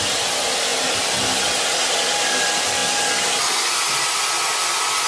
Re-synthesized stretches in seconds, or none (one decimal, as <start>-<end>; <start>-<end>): none